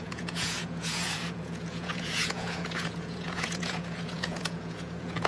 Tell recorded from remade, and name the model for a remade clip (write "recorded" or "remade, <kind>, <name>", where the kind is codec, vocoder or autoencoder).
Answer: remade, vocoder, Vocos